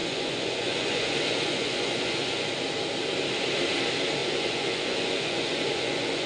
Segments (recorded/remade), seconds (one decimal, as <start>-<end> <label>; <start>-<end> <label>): 0.0-2.5 remade; 2.5-4.2 recorded; 4.2-6.3 remade